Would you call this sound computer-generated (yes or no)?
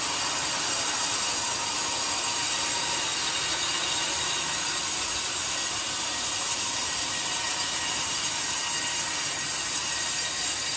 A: no